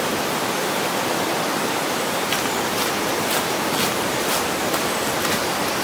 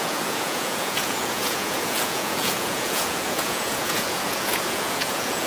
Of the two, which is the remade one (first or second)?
second